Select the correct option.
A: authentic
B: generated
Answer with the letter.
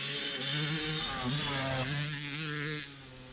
A